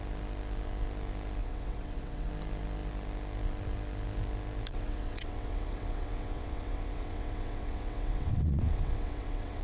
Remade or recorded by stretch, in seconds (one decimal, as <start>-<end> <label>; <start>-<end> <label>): 0.0-1.4 recorded; 1.4-2.3 remade; 2.3-4.7 recorded; 4.7-9.6 remade